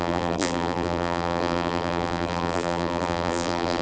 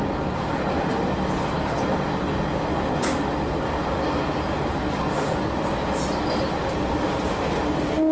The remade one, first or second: first